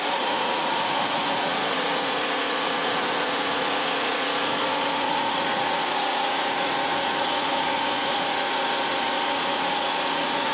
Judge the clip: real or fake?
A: fake